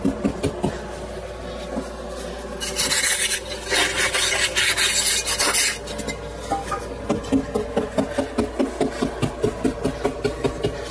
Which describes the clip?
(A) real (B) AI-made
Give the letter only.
A